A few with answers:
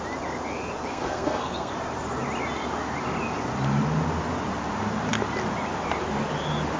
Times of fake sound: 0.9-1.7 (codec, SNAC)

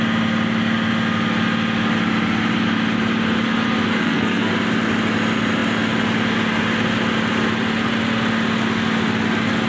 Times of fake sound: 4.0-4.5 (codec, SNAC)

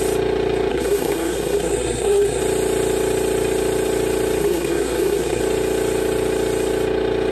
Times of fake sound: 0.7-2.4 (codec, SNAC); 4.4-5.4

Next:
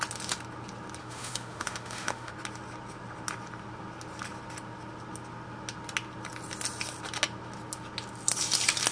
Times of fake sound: 1.0-2.3 (autoencoder, DAC-VAE)

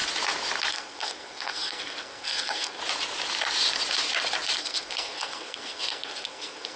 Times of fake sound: 0.7-2.8 (codec, SNAC); 4.6-6.8

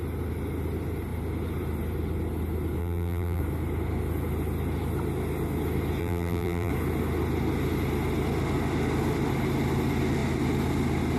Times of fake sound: 2.8-3.4 (vocoder, BigVGAN v2); 6.0-6.7